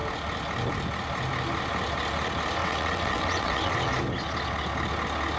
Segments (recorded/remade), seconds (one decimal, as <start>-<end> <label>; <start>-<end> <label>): 0.0-2.6 recorded; 2.6-3.9 remade; 3.9-5.4 recorded